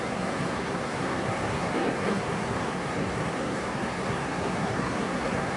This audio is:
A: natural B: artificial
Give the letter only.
B